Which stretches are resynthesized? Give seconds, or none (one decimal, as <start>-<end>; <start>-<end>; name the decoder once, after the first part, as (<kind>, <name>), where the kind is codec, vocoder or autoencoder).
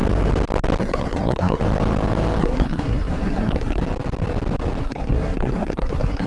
0.8-1.6 (codec, SNAC); 2.4-3.8; 4.8-6.3